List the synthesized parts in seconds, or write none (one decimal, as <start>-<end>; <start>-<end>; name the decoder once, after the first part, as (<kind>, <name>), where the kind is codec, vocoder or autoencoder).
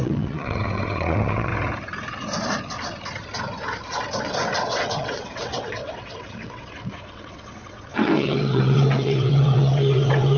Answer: 0.0-1.5 (vocoder, WaveNeXt); 4.2-10.4